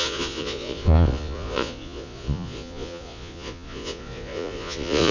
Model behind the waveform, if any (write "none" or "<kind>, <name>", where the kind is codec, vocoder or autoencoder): vocoder, Vocos